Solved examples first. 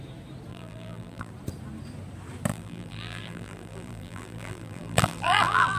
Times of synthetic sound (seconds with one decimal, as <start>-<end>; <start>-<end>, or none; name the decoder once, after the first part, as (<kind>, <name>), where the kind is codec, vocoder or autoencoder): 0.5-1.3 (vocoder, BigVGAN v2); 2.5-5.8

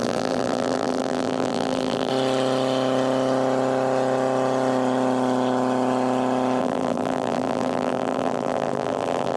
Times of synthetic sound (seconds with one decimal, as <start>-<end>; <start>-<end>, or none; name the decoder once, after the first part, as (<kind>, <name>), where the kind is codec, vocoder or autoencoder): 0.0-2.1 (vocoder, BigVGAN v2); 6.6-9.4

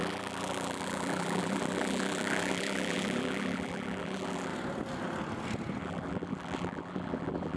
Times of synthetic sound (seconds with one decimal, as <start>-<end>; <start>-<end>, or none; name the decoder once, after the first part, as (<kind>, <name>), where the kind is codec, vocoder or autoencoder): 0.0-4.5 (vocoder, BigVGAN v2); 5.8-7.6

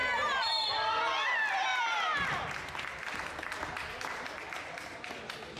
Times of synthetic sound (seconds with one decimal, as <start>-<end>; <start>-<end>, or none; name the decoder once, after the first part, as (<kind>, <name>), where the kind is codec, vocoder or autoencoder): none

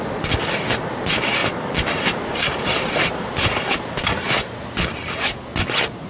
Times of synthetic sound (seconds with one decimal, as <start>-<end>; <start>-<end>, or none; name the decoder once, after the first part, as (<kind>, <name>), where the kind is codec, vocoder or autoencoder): 1.4-3.7 (vocoder, BigVGAN v2)

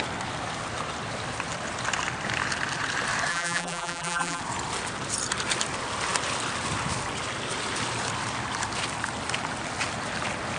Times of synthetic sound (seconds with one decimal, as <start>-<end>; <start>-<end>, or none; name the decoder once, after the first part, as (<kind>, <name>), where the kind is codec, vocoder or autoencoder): 3.3-4.4 (vocoder, BigVGAN v2)